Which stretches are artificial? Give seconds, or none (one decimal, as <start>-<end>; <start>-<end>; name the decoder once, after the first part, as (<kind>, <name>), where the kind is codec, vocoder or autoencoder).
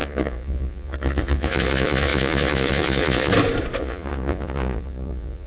0.0-3.3 (vocoder, Vocos); 3.8-5.5